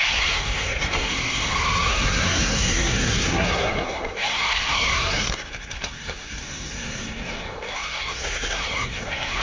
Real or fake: fake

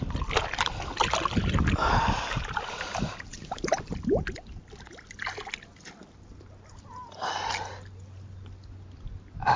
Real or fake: real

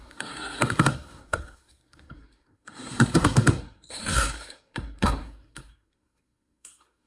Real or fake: fake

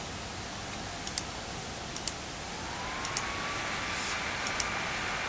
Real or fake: real